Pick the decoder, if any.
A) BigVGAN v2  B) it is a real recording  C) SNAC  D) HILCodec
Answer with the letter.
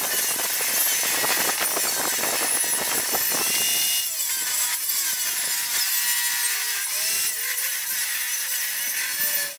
B